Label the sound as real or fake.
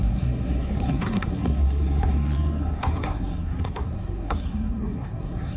fake